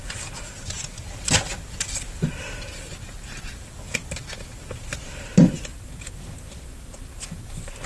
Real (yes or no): yes